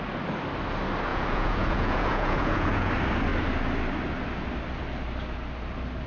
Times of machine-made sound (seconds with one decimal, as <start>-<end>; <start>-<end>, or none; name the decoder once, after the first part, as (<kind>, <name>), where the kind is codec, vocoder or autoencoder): 1.1-2.9 (vocoder, Vocos)